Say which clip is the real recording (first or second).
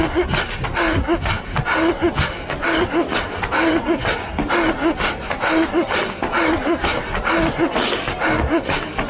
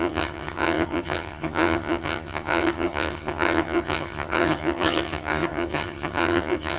first